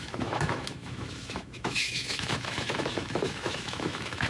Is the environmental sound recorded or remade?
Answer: remade